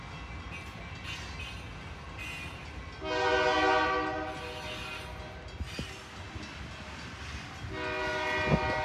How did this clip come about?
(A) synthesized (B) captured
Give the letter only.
B